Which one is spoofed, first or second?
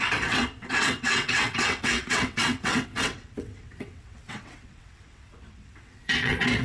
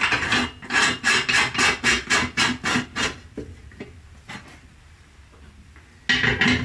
first